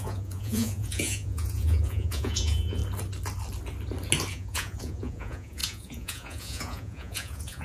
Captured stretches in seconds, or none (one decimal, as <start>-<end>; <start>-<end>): 2.8-4.3